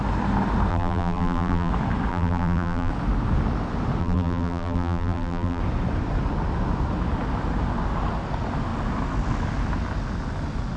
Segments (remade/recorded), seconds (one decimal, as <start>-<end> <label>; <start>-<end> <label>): 0.0-0.7 recorded; 0.7-1.7 remade; 1.7-2.1 recorded; 2.1-2.9 remade; 2.9-4.0 recorded; 4.0-5.6 remade; 5.6-10.8 recorded